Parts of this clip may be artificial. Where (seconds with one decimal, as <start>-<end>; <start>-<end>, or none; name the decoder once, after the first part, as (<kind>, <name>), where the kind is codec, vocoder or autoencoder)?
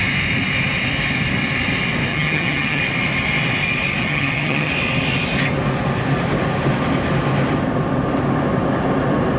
2.1-2.8 (vocoder, HiFi-GAN); 4.0-4.7